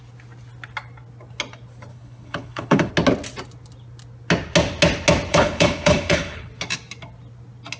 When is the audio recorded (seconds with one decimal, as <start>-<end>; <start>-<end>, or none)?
0.0-1.9; 2.9-5.3; 6.5-7.8